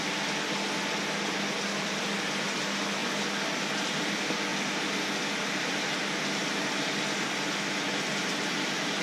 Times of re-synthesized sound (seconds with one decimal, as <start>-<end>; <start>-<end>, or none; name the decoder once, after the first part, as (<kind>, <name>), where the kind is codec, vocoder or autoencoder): none